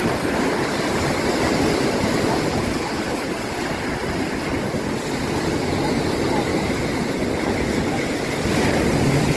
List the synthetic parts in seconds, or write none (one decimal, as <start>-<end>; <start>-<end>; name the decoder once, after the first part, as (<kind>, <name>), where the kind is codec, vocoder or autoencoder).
2.5-3.3 (codec, HILCodec)